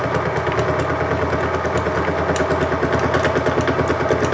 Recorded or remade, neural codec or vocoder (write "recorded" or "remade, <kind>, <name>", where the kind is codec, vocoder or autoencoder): recorded